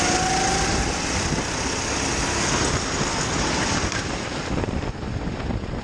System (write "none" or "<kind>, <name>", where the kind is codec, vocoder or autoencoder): none